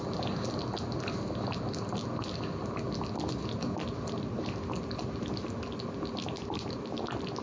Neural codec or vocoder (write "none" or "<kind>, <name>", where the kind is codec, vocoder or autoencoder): none